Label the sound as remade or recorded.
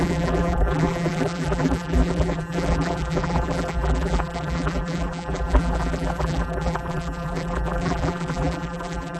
remade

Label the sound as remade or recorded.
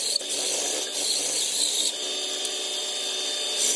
recorded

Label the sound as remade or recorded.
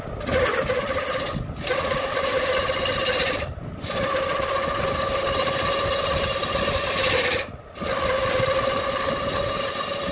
recorded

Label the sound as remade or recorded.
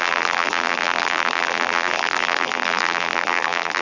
remade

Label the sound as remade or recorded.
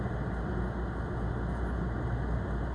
recorded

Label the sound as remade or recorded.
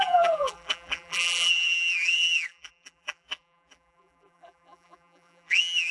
remade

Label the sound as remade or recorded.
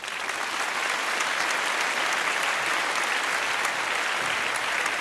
recorded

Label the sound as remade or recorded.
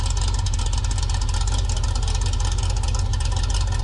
recorded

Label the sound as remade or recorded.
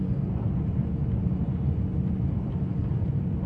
recorded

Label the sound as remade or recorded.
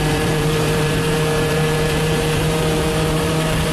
remade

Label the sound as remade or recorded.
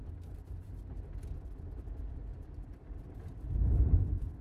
remade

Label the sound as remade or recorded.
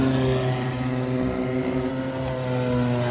recorded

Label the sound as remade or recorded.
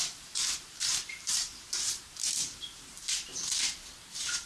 remade